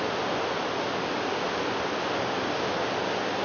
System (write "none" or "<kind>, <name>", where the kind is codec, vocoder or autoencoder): none